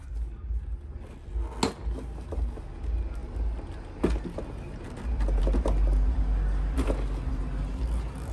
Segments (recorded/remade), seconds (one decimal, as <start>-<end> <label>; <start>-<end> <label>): 0.0-8.3 recorded